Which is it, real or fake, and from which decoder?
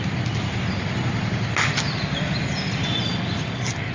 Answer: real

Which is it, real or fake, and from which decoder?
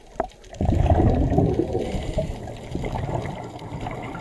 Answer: real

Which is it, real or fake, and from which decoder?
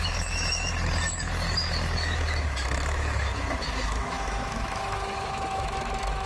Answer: fake, autoencoder, DAC-VAE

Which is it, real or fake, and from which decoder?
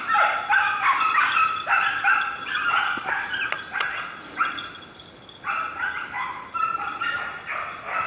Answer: real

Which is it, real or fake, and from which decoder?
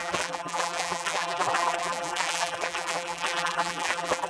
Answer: fake, vocoder, BigVGAN v2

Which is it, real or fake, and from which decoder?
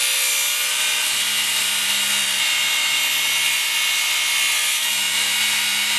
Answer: real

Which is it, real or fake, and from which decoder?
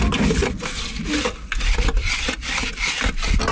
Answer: real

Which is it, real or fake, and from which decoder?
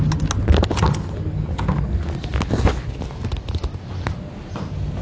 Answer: real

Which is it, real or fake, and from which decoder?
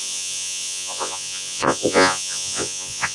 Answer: fake, vocoder, Vocos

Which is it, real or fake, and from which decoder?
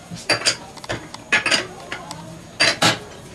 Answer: real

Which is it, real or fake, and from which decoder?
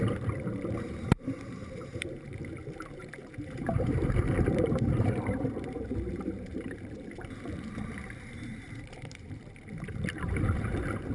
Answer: fake, vocoder, BigVGAN v2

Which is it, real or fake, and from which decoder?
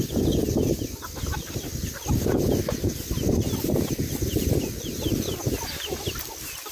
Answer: real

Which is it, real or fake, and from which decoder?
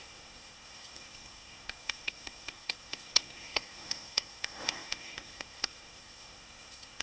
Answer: fake, codec, SNAC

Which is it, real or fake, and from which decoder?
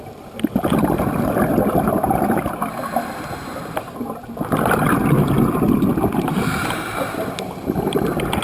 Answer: real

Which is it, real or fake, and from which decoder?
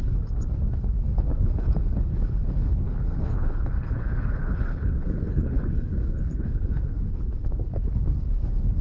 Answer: fake, codec, HILCodec